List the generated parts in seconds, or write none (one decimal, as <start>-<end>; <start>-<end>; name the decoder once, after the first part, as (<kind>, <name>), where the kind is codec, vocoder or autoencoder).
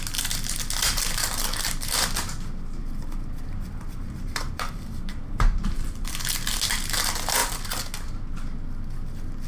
2.8-6.2 (vocoder, BigVGAN v2)